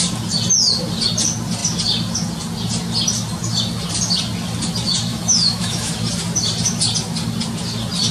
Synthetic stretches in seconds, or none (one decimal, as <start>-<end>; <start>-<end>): 5.1-6.0